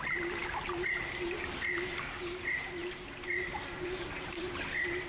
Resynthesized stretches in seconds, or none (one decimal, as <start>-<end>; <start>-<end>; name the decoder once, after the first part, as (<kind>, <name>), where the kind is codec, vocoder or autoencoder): 2.8-4.5 (vocoder, BigVGAN v2)